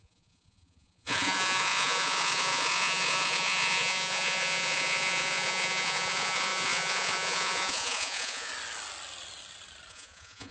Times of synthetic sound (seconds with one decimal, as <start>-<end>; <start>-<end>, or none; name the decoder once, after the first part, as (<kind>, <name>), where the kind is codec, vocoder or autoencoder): 0.0-8.5 (vocoder, Vocos); 9.9-10.5